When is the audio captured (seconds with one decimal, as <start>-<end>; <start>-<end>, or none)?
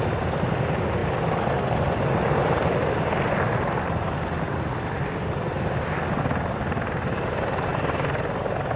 0.0-8.8